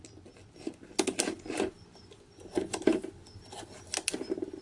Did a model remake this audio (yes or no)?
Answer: no